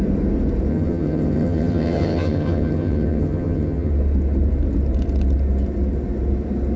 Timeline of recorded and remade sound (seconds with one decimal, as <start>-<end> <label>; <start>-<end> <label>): 0.0-0.7 recorded; 0.7-3.9 remade; 3.9-6.8 recorded